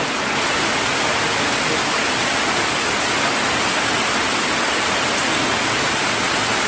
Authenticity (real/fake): real